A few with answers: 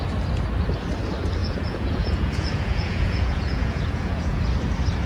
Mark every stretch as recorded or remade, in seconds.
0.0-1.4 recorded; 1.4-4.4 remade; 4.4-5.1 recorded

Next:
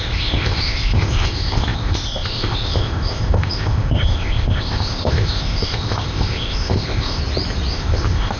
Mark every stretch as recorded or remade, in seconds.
0.0-7.2 remade; 7.2-7.7 recorded; 7.7-8.4 remade

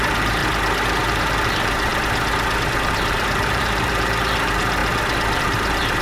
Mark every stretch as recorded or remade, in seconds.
0.0-0.4 remade; 0.4-1.0 recorded; 1.0-1.9 remade; 1.9-2.7 recorded; 2.7-4.8 remade; 4.8-5.4 recorded; 5.4-6.0 remade

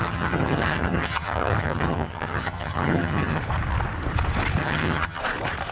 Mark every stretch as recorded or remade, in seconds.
0.0-3.4 remade; 3.4-4.6 recorded; 4.6-5.2 remade; 5.2-5.7 recorded

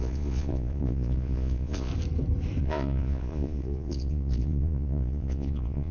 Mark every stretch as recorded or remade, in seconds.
0.0-1.9 remade; 1.9-2.6 recorded; 2.6-5.9 remade

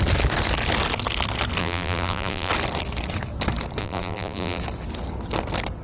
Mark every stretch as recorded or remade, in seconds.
0.0-1.6 recorded; 1.6-2.5 remade; 2.5-3.8 recorded; 3.8-4.6 remade; 4.6-5.8 recorded